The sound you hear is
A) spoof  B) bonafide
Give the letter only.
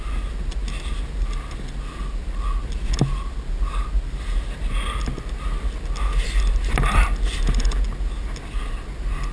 B